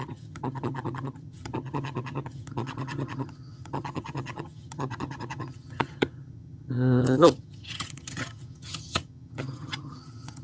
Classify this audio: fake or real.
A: fake